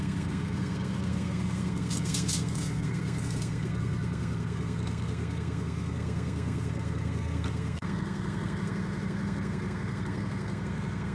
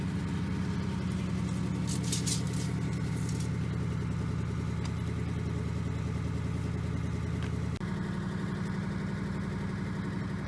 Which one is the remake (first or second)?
first